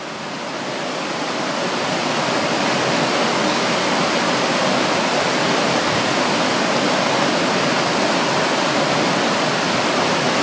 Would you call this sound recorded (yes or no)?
yes